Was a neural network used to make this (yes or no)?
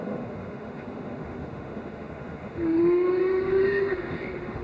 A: yes